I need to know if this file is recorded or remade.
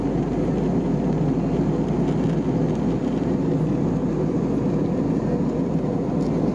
recorded